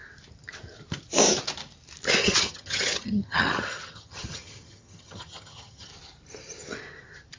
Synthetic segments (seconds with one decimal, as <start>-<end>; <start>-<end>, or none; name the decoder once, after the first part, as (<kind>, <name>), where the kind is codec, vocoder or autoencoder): 2.2-5.9 (vocoder, HiFi-GAN)